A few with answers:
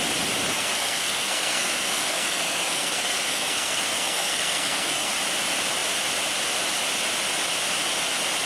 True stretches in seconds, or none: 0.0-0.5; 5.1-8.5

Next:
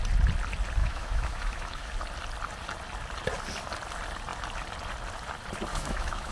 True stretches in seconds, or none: 0.0-0.8; 1.9-5.7

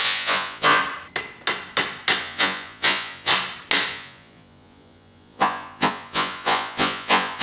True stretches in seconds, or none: 0.8-2.2; 3.3-3.9

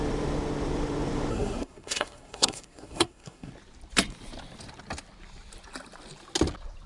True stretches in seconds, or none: 0.0-1.3; 3.5-6.9

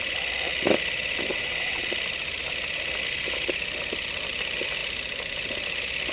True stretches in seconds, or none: 0.0-1.3; 1.8-6.1

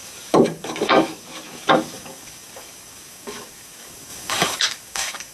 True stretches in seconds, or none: none

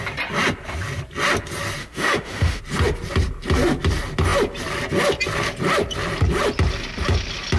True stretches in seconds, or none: 0.0-1.8; 2.6-7.6

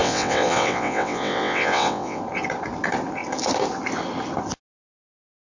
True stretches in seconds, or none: 2.2-5.6